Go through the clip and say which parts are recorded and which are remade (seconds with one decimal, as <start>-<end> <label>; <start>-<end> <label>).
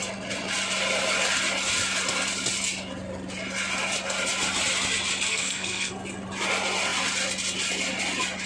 0.0-5.3 recorded; 5.3-5.9 remade; 5.9-8.5 recorded